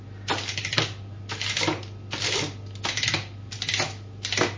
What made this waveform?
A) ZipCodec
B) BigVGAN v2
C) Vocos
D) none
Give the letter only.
D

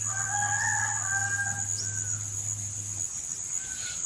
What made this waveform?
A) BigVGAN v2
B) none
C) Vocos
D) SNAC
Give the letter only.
B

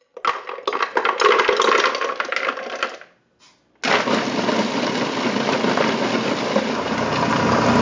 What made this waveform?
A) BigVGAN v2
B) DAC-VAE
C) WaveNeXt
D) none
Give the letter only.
D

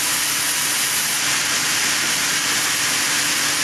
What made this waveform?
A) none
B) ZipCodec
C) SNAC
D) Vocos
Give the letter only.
A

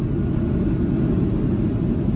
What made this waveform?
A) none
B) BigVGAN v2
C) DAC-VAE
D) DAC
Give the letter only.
A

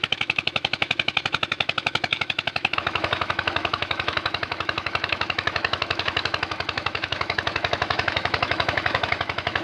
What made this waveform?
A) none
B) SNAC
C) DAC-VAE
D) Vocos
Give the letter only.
C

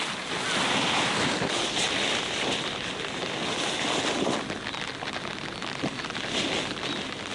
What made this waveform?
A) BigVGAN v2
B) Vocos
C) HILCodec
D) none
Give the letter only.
D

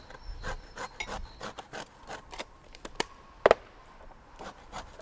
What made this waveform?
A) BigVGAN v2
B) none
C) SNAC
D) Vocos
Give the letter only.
B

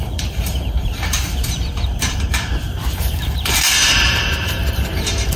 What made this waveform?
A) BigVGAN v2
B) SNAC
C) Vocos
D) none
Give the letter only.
A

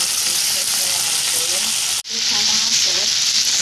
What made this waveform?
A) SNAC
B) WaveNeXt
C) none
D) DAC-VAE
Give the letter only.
C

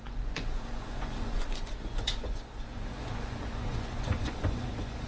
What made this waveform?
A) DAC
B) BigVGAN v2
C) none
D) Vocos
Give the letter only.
D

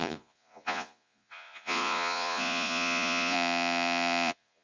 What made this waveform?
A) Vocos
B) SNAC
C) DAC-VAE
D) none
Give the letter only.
A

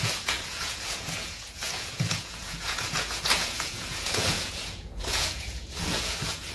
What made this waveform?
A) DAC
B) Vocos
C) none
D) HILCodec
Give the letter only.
B